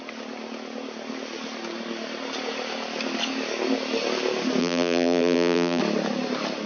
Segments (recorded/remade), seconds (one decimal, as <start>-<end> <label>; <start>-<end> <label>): 0.0-4.6 recorded; 4.6-5.8 remade; 5.8-6.7 recorded

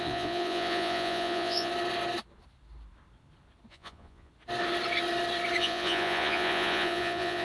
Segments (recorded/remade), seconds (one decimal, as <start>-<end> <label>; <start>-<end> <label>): 0.0-1.7 remade; 1.7-3.7 recorded; 3.7-4.3 remade; 4.3-5.6 recorded; 5.6-7.4 remade

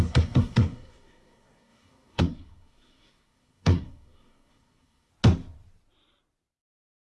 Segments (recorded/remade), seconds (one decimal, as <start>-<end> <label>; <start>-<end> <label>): 0.0-5.1 remade; 5.1-7.1 recorded

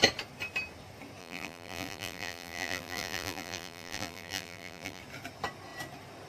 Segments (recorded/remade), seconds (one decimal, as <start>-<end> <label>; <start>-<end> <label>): 0.0-1.2 recorded; 1.2-5.0 remade; 5.0-6.3 recorded